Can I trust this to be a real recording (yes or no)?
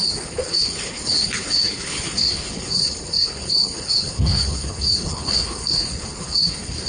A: no